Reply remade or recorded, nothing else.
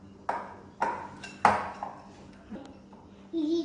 recorded